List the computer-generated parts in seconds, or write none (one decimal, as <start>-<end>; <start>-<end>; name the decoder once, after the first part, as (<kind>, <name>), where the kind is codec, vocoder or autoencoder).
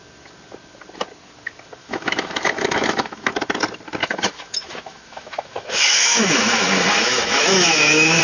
1.8-3.3 (autoencoder, DAC-VAE); 4.0-8.2